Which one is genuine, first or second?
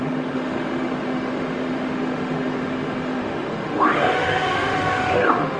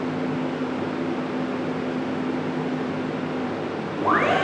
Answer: second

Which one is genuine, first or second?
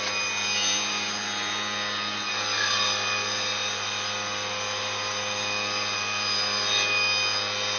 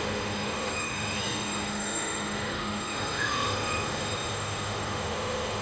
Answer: first